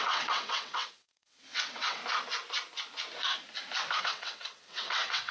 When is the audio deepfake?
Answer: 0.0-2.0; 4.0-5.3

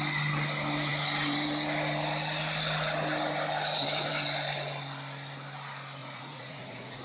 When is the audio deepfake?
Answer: 6.0-7.0

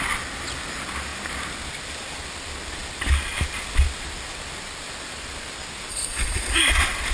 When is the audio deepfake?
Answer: 5.9-6.6

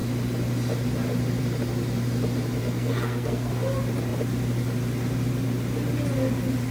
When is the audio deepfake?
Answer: 2.6-3.5